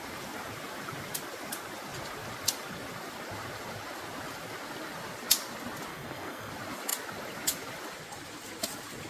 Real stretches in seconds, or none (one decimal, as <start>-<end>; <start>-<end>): 0.0-5.9; 6.5-9.1